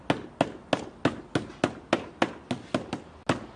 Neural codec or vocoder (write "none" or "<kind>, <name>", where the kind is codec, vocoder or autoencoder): none